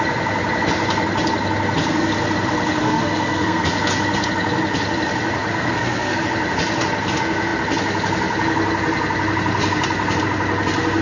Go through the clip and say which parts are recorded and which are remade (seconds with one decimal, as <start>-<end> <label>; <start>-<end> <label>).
0.0-2.8 recorded; 2.8-3.7 remade; 3.7-5.5 recorded; 5.5-6.2 remade; 6.2-11.0 recorded